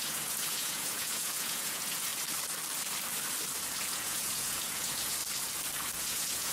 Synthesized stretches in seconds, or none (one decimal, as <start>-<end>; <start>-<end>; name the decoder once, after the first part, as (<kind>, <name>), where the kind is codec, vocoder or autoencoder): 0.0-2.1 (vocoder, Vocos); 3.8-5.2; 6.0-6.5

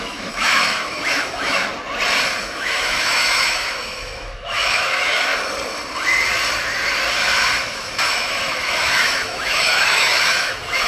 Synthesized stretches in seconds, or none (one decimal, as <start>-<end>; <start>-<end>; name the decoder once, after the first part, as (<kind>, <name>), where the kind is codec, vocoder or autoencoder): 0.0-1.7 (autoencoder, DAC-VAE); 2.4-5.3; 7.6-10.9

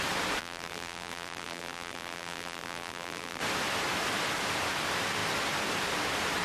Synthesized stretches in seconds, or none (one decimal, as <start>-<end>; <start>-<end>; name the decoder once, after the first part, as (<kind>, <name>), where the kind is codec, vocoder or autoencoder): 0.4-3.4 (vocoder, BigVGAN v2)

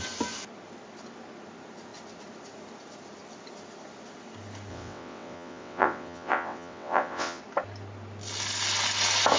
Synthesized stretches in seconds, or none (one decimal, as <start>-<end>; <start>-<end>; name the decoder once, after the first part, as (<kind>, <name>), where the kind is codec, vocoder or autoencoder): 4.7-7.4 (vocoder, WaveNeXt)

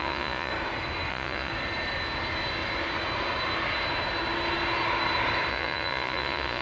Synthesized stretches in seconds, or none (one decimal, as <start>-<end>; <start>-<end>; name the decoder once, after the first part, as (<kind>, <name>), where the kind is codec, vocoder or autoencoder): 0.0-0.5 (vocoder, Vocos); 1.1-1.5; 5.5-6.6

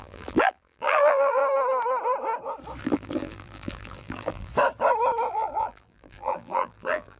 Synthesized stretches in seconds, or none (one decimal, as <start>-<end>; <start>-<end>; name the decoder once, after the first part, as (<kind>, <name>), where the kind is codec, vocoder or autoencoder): 0.0-1.4 (vocoder, BigVGAN v2); 2.8-4.5; 5.3-7.2

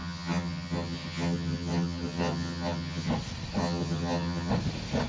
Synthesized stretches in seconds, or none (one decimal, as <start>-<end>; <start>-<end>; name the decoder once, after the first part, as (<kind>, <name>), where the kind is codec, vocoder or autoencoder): 0.0-3.1 (vocoder, HiFi-GAN); 3.6-4.5

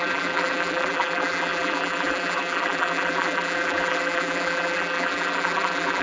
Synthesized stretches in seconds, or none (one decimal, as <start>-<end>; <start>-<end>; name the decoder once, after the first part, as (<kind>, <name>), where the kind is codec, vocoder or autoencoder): 0.0-6.0 (vocoder, BigVGAN v2)